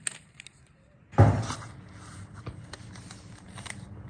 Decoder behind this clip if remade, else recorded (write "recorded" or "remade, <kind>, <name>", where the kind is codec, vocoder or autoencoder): recorded